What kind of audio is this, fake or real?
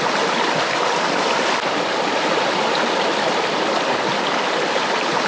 real